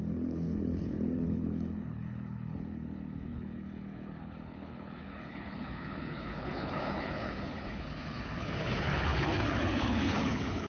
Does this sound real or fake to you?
fake